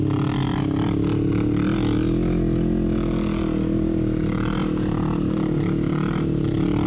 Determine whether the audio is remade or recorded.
recorded